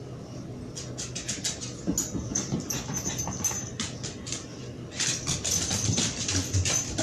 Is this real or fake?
real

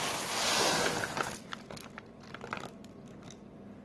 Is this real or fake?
real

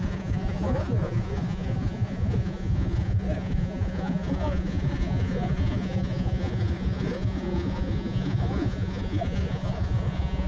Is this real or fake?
fake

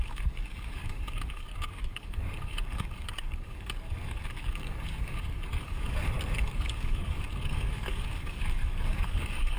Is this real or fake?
fake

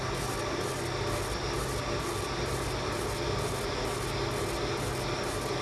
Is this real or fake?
real